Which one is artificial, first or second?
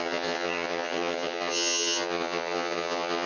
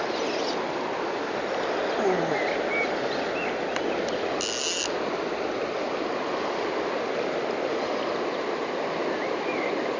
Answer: first